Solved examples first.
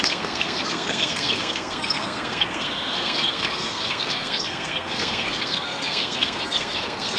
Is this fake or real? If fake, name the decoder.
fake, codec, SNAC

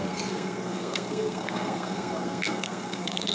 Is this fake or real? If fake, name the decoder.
fake, codec, SNAC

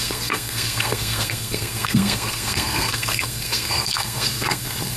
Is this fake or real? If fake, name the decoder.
fake, codec, SNAC